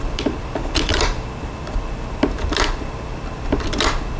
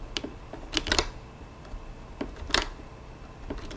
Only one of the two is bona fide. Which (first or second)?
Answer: second